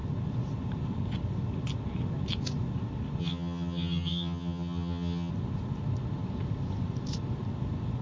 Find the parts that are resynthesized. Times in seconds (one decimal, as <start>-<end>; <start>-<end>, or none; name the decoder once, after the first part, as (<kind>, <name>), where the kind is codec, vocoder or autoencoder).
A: 3.2-5.3 (vocoder, HiFi-GAN)

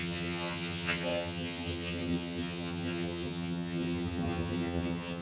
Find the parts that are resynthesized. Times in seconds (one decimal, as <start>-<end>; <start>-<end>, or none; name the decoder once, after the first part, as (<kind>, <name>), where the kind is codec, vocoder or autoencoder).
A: 0.0-5.2 (vocoder, HiFi-GAN)

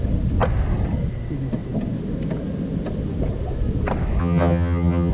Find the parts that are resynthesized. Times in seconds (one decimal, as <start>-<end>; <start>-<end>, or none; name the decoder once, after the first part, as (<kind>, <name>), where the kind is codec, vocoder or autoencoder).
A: 4.2-5.1 (vocoder, HiFi-GAN)

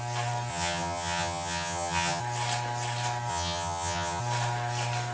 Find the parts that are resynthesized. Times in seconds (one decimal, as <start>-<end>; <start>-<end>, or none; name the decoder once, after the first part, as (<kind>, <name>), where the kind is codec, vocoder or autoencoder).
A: 0.5-2.2 (vocoder, HiFi-GAN); 3.3-4.2

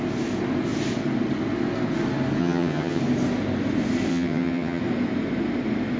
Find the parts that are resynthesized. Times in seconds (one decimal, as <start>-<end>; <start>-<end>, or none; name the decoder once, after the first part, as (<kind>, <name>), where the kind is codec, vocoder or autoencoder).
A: 2.4-3.0 (vocoder, HiFi-GAN); 4.1-4.8

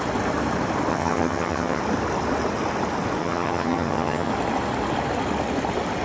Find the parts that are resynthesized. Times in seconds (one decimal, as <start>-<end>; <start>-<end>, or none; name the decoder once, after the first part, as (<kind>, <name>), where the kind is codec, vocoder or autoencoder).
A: 0.9-1.8 (vocoder, HiFi-GAN); 3.2-4.3

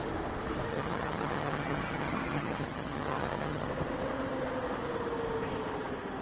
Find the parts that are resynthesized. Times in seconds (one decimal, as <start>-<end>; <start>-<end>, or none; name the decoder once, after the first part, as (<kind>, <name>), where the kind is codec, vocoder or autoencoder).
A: 0.7-3.7 (vocoder, HiFi-GAN)